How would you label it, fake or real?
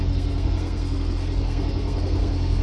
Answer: fake